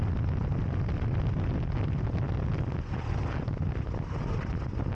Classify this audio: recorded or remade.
recorded